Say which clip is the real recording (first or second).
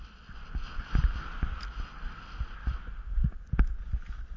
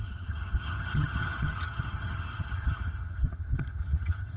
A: first